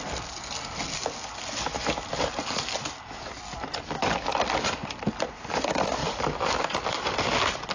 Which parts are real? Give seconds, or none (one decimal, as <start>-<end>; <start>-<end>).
0.0-7.7